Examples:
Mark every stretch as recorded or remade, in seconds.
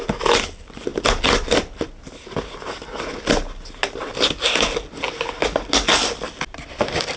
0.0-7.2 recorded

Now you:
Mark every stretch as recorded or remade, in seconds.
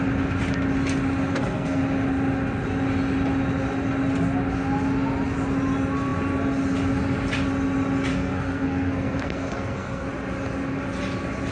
0.0-1.3 recorded; 1.3-1.8 remade; 1.8-8.1 recorded; 8.1-10.1 remade; 10.1-11.5 recorded